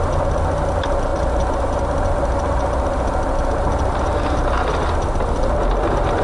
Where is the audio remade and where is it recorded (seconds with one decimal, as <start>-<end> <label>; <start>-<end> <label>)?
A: 0.0-6.2 recorded